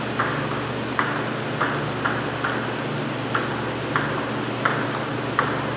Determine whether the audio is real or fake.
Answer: real